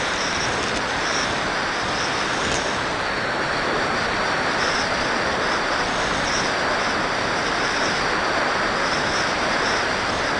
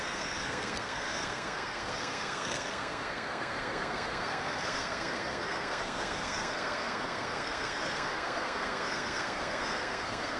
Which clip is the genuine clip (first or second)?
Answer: first